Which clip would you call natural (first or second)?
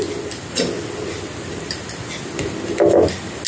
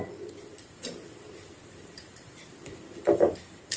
first